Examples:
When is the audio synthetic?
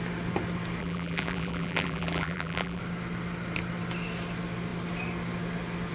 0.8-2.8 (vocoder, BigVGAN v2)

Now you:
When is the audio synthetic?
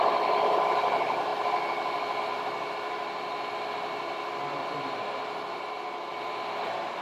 4.6-7.0 (vocoder, BigVGAN v2)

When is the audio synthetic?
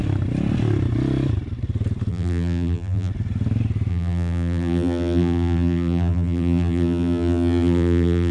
2.1-3.1 (vocoder, BigVGAN v2); 3.9-8.3